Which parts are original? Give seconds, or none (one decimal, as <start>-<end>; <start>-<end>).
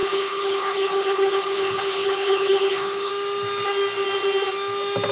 3.1-5.1